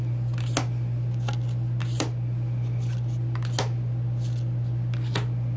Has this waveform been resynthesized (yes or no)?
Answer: no